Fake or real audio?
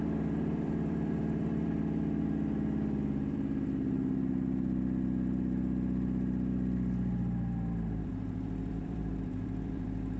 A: fake